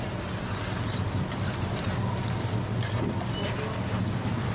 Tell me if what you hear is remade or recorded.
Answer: recorded